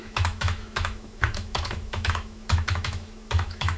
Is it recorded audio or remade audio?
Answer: remade